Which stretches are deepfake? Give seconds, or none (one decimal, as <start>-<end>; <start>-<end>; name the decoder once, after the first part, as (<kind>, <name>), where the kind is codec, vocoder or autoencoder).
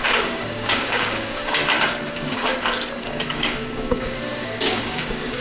0.0-1.6 (codec, DAC); 2.1-2.5; 3.0-5.4